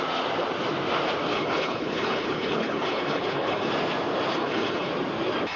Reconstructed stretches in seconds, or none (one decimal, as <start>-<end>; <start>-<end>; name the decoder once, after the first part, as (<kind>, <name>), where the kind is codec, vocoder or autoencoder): 1.3-3.7 (codec, HILCodec); 4.3-4.9